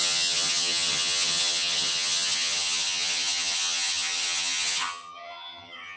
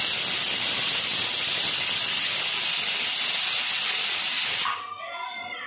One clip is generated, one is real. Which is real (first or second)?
second